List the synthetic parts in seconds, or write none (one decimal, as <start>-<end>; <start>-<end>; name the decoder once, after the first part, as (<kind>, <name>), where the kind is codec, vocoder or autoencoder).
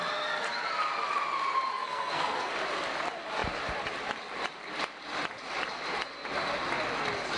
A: 1.7-2.5 (codec, SNAC)